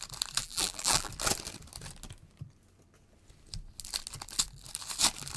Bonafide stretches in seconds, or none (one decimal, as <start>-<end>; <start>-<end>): 0.0-0.4; 1.1-5.4